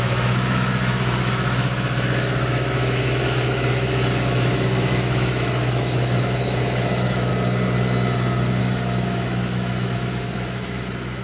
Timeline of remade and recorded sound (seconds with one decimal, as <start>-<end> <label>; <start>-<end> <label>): 0.0-7.3 remade; 7.3-8.6 recorded; 8.6-11.2 remade